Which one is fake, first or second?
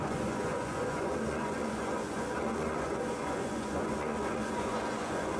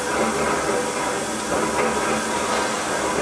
first